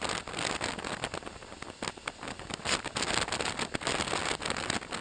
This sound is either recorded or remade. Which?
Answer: recorded